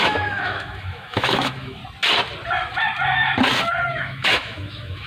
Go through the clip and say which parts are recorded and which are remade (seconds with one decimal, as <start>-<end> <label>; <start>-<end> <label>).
0.0-1.8 remade; 1.8-3.9 recorded; 3.9-5.1 remade